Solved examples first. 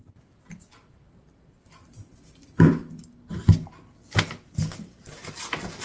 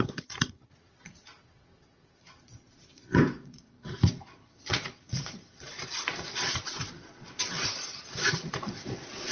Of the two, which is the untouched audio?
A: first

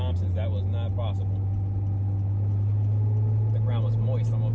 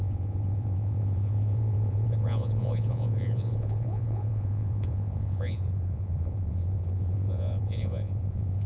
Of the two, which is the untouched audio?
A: first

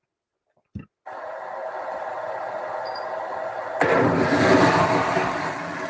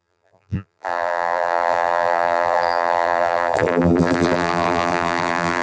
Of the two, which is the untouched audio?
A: first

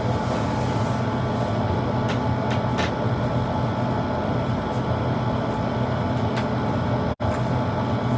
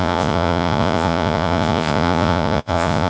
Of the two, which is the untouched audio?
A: first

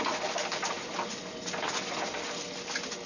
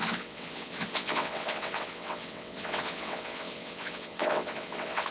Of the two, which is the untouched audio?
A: first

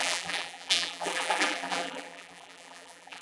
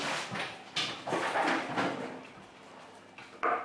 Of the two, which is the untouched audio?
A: second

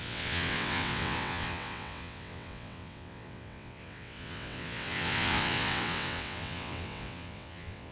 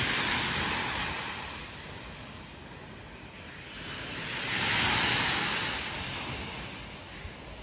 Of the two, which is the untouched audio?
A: second